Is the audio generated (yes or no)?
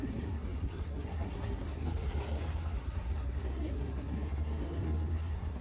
yes